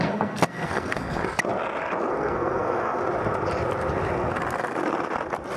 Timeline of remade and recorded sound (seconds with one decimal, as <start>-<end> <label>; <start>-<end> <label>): 0.0-1.2 remade; 1.2-2.1 recorded; 2.1-3.0 remade; 3.0-5.6 recorded

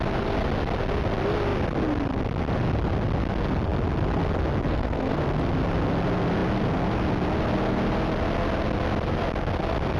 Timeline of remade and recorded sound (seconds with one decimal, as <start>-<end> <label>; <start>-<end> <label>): 0.0-4.7 recorded; 4.7-5.2 remade; 5.2-10.0 recorded

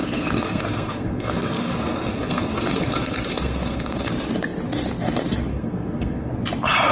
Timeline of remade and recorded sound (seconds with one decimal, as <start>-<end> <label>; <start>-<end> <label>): 0.0-4.1 remade; 4.1-5.5 recorded; 5.5-6.3 remade; 6.3-6.9 recorded

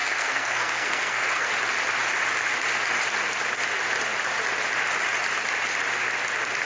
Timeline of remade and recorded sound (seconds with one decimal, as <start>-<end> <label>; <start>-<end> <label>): 0.0-1.5 remade; 1.5-6.6 recorded

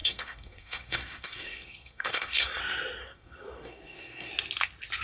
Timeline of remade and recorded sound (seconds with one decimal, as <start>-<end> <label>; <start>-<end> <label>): 0.0-2.6 remade; 2.6-3.0 recorded; 3.0-4.3 remade; 4.3-5.0 recorded